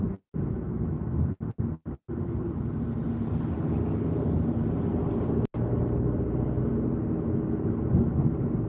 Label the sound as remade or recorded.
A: recorded